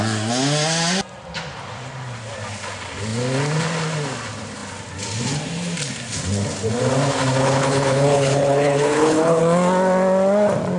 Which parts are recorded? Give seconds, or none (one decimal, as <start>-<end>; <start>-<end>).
0.0-7.4; 9.4-10.8